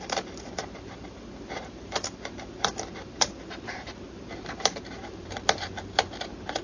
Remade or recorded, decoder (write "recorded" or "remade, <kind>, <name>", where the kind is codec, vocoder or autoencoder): remade, vocoder, BigVGAN v2